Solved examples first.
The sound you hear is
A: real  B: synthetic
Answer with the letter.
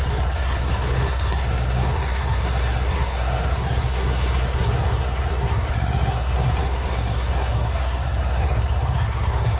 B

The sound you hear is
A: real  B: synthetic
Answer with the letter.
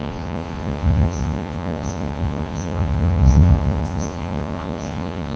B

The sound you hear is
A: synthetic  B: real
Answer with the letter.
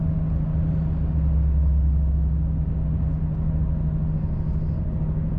B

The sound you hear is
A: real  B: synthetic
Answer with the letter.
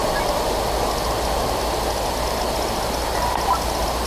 A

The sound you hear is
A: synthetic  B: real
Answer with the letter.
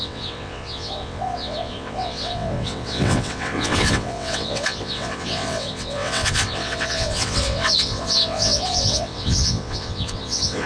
A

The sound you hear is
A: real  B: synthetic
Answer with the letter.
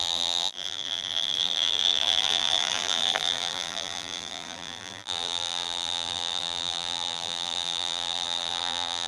B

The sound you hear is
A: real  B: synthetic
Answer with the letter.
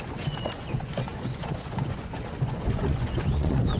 B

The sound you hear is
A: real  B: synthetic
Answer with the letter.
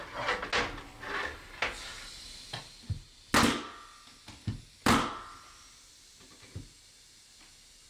A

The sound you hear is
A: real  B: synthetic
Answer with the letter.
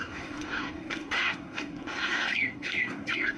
B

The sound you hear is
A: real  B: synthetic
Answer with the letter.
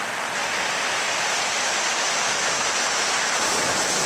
A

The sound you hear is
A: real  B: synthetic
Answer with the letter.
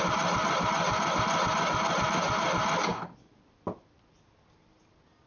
A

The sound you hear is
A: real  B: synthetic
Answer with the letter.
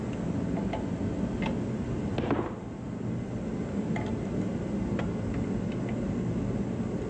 A